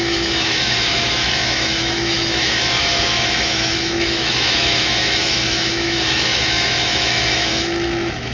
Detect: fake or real fake